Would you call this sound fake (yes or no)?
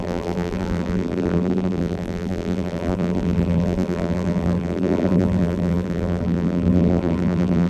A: yes